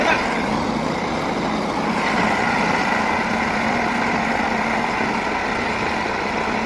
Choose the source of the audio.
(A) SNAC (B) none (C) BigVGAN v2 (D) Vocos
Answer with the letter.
B